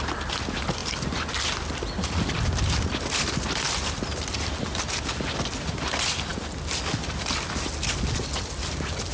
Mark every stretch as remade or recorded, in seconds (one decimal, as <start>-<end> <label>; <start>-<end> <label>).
0.0-9.1 recorded